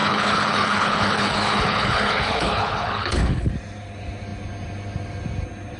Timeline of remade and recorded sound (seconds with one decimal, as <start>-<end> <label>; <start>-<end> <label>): 0.0-3.5 remade; 3.5-5.8 recorded